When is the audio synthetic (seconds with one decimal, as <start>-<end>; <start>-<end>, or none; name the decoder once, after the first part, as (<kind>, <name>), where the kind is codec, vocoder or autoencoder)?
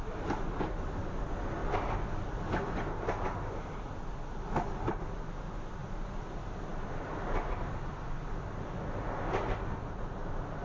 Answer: none